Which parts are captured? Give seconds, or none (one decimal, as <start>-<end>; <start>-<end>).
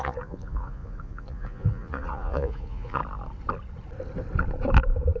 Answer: 3.0-5.2